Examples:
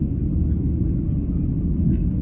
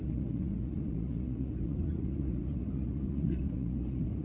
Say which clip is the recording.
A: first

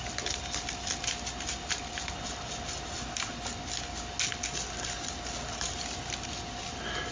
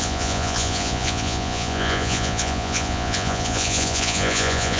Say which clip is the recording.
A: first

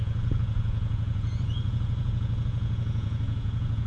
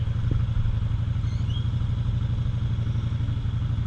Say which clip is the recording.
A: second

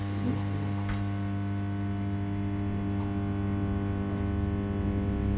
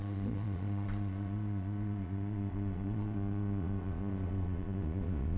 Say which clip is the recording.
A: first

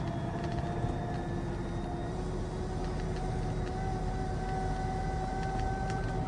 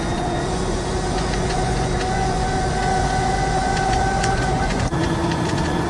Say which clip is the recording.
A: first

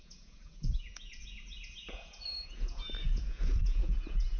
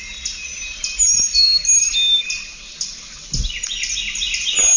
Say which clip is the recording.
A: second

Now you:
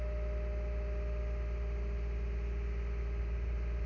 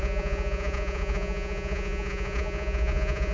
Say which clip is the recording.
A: first